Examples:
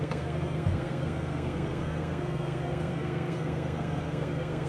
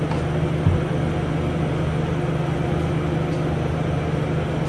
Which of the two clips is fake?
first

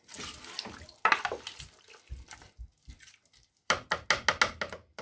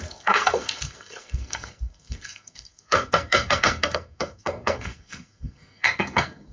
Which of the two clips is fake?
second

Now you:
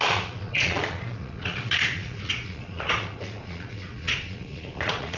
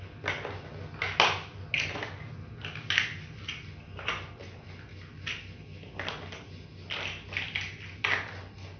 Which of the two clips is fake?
first